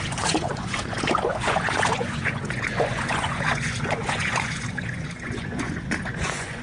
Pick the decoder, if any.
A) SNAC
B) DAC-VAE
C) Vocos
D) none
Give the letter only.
C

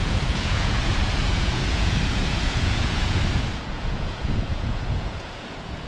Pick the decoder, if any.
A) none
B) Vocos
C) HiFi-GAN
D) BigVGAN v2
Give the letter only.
B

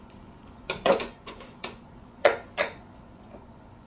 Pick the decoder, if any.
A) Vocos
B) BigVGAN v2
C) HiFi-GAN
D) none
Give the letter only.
A